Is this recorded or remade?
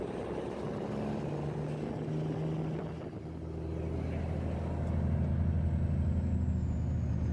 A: recorded